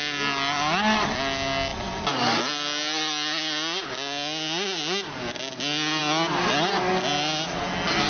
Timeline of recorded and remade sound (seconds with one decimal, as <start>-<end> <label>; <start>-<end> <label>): 0.0-8.1 recorded